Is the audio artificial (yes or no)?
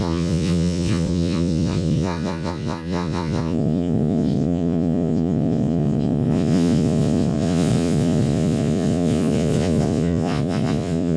yes